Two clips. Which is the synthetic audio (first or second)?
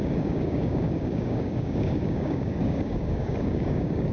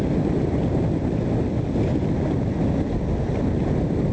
first